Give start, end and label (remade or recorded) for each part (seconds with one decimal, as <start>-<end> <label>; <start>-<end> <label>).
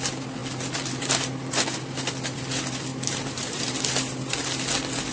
0.0-2.9 recorded; 2.9-3.8 remade; 3.8-5.1 recorded